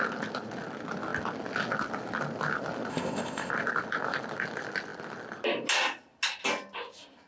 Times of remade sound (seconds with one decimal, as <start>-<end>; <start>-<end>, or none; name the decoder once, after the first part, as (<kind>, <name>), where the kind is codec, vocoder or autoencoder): 2.9-3.5 (codec, ZipCodec)